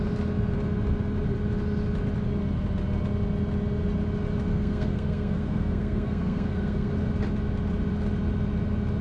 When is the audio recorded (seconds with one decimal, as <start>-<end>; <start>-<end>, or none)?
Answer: 0.0-4.5; 6.9-9.0